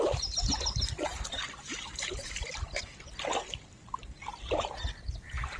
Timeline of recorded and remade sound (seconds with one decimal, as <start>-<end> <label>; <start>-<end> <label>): 0.0-5.6 recorded